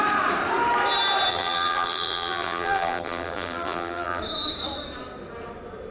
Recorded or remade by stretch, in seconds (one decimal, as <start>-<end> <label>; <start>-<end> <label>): 0.0-1.3 recorded; 1.3-4.2 remade; 4.2-5.9 recorded